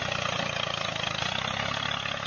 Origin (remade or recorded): recorded